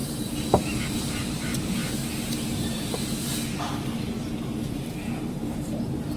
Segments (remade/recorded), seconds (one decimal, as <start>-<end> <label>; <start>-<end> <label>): 0.0-0.8 recorded; 0.8-1.8 remade; 1.8-4.4 recorded; 4.4-6.2 remade